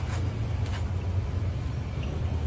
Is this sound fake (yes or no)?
no